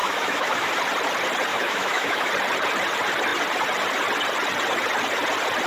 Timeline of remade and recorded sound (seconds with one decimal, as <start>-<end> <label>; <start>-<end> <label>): 0.0-0.7 remade; 0.7-1.5 recorded; 1.5-2.3 remade; 2.3-5.7 recorded